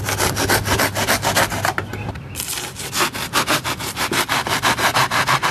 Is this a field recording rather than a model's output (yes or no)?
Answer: yes